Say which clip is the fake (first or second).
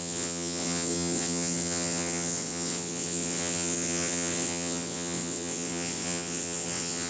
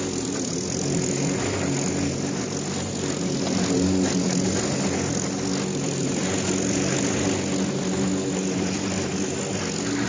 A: first